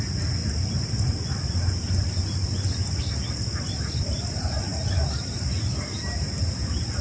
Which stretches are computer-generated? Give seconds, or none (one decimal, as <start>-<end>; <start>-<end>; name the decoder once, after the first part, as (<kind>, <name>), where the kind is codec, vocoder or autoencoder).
none